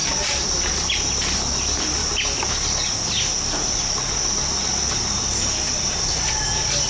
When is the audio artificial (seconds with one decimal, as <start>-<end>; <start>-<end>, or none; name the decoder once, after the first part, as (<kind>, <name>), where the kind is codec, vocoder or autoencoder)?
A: none